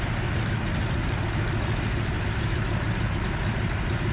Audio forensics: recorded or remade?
recorded